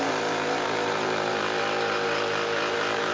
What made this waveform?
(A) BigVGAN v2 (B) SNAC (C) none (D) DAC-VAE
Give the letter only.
A